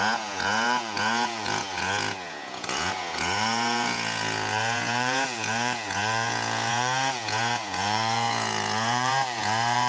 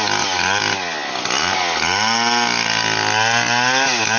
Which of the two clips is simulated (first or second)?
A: first